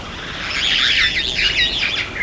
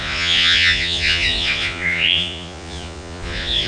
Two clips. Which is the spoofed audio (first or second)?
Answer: second